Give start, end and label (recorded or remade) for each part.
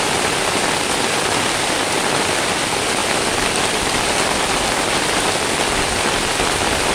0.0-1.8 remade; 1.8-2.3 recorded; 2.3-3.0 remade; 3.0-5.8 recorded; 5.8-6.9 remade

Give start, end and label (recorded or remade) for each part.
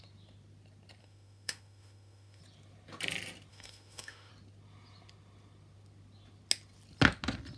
0.0-1.0 recorded; 1.0-2.4 remade; 2.4-3.5 recorded; 3.5-4.3 remade; 4.3-7.6 recorded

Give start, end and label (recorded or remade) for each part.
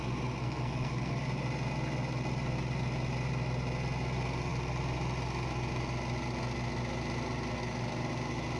0.0-0.4 recorded; 0.4-1.1 remade; 1.1-8.6 recorded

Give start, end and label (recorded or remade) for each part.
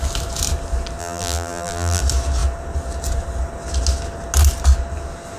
0.0-1.0 recorded; 1.0-2.0 remade; 2.0-5.4 recorded